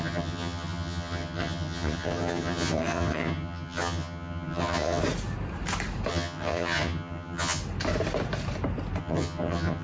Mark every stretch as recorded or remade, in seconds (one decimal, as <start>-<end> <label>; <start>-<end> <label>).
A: 0.0-5.0 remade; 5.0-6.1 recorded; 6.1-7.6 remade; 7.6-9.0 recorded; 9.0-9.8 remade